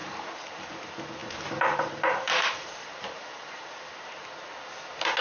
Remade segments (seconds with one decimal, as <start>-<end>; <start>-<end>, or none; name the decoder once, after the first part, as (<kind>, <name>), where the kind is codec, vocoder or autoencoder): 0.0-0.7 (vocoder, BigVGAN v2); 1.2-4.3